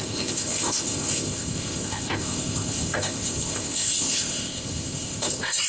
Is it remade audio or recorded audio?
remade